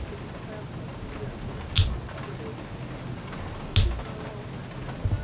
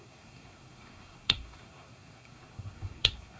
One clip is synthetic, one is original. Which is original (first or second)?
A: first